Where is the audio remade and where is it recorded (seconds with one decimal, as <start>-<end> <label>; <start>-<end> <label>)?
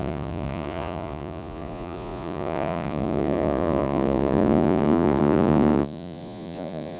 0.0-7.0 remade